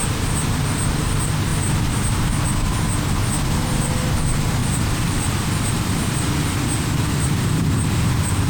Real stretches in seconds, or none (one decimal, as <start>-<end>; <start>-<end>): 0.0-4.6